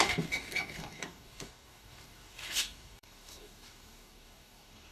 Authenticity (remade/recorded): remade